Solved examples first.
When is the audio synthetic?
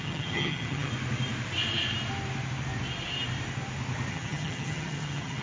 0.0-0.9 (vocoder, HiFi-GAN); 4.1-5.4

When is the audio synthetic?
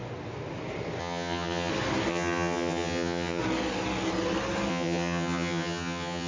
1.0-1.7 (vocoder, HiFi-GAN); 2.1-3.4; 4.7-6.3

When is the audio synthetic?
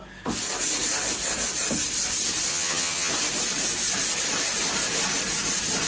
2.5-3.1 (vocoder, HiFi-GAN)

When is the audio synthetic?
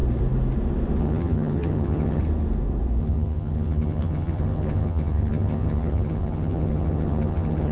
1.0-2.2 (vocoder, HiFi-GAN); 3.0-7.7